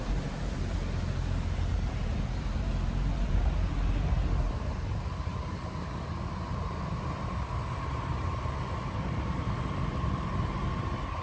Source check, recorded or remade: remade